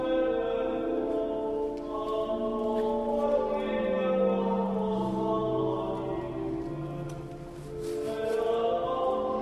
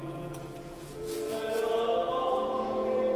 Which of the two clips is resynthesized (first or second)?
second